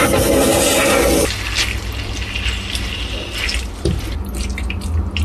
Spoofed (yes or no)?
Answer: no